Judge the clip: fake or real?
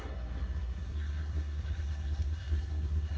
fake